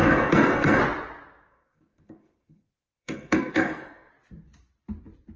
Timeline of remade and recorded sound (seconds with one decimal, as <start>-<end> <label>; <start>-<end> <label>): 0.0-0.8 remade; 0.8-1.5 recorded; 1.5-4.1 remade; 4.1-5.4 recorded

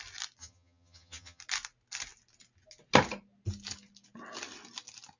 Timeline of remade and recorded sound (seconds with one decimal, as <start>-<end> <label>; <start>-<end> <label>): 0.0-0.4 recorded; 0.4-1.4 remade; 1.4-5.2 recorded

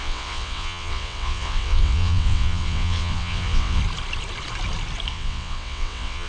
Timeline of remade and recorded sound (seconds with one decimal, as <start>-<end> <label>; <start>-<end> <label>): 0.0-3.8 remade; 3.8-5.1 recorded; 5.1-6.3 remade

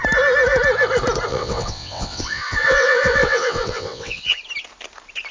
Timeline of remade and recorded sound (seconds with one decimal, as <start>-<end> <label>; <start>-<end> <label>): 0.0-1.3 recorded; 1.3-4.4 remade; 4.4-5.3 recorded

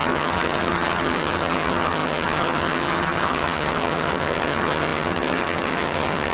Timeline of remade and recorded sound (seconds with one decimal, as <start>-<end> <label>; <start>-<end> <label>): 0.0-6.3 remade